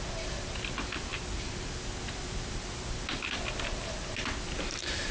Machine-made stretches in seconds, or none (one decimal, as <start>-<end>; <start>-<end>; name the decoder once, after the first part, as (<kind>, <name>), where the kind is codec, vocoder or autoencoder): none